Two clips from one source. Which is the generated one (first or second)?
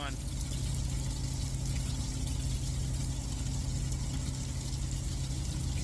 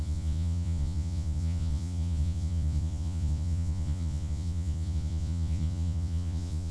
second